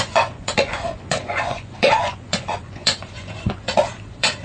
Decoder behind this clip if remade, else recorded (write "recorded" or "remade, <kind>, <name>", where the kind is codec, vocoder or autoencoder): remade, vocoder, Vocos